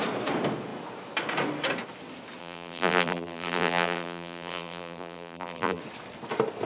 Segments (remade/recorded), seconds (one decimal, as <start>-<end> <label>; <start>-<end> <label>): 0.0-2.4 recorded; 2.4-5.8 remade; 5.8-6.7 recorded